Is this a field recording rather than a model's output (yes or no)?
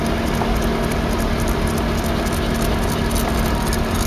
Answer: yes